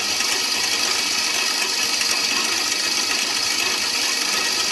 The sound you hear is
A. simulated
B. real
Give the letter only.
B